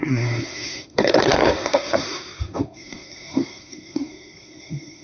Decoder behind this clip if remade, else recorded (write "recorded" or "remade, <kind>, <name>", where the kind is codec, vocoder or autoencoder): remade, codec, SNAC